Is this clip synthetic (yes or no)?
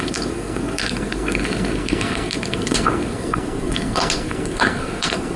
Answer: yes